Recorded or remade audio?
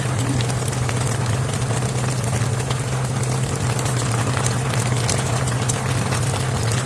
recorded